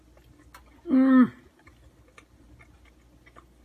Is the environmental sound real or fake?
real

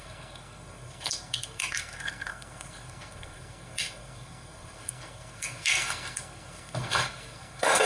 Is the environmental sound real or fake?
fake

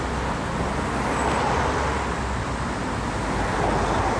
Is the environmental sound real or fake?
real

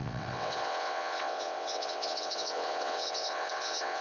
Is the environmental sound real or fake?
fake